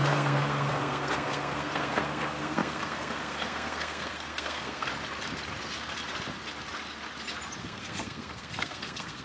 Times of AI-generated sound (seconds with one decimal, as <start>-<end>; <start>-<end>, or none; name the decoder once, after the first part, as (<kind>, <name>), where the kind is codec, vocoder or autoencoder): 0.0-4.9 (codec, SNAC); 7.6-9.2